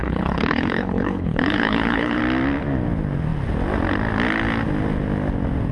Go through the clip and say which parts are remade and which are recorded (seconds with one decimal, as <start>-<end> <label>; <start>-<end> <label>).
0.0-2.2 remade; 2.2-5.7 recorded